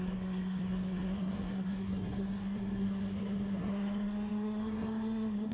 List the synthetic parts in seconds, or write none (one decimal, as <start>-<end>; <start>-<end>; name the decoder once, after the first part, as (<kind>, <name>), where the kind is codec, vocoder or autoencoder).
0.0-5.5 (codec, SNAC)